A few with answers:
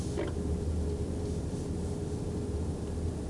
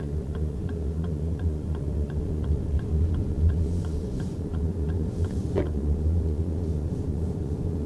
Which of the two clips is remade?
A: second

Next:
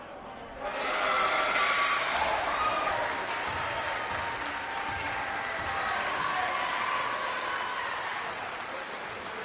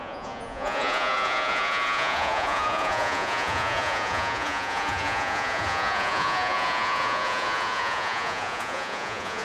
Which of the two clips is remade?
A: second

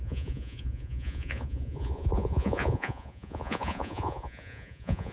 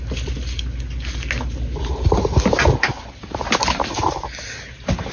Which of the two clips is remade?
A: first